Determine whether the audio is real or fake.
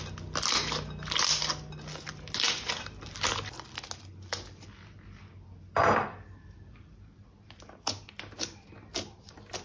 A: real